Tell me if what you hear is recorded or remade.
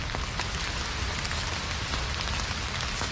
recorded